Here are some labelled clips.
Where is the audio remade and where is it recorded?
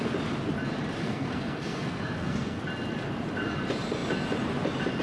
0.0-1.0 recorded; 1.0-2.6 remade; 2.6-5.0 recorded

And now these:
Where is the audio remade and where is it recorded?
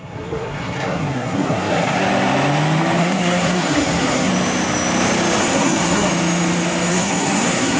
0.0-2.0 remade; 2.0-3.0 recorded; 3.0-4.3 remade; 4.3-5.4 recorded; 5.4-6.1 remade; 6.1-6.9 recorded; 6.9-7.8 remade